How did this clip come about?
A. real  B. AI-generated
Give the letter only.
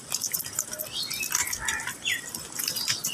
B